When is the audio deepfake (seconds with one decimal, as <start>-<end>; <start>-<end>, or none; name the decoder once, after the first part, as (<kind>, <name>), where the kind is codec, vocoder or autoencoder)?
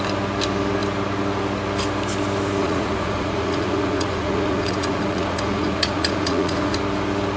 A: 2.6-6.8 (vocoder, Vocos)